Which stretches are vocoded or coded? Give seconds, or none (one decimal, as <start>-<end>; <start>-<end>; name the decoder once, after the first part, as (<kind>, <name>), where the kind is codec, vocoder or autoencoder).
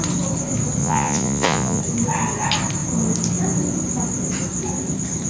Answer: 0.8-1.8 (vocoder, Vocos)